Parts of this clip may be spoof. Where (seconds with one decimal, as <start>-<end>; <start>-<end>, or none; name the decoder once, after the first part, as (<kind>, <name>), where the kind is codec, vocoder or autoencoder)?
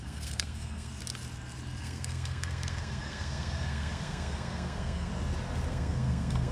0.0-0.9 (codec, SNAC); 1.8-5.1; 5.7-6.5